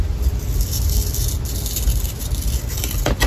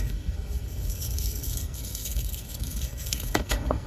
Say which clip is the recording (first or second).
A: first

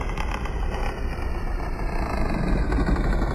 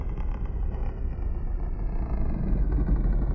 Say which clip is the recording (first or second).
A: second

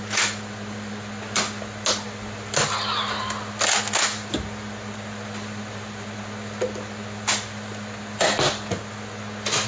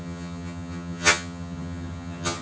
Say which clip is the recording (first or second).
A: first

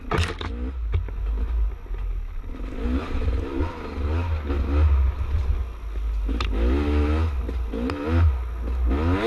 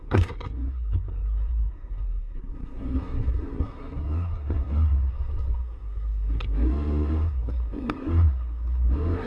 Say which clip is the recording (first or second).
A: first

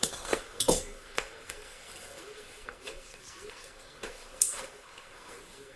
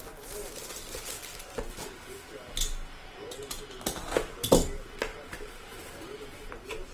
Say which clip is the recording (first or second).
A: second